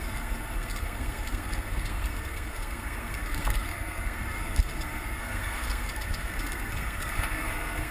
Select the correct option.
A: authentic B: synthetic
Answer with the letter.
B